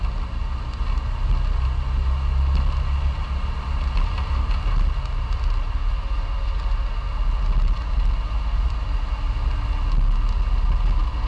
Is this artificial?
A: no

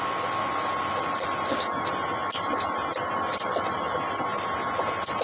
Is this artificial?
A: no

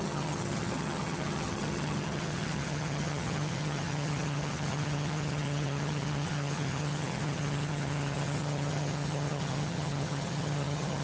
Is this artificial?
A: yes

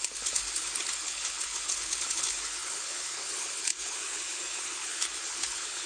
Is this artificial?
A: yes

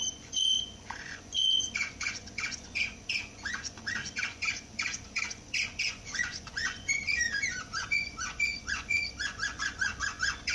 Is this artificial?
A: yes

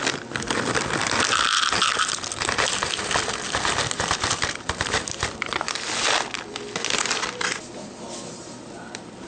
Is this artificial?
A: no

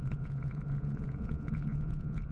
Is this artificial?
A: yes